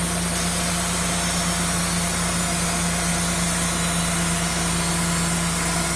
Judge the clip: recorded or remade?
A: recorded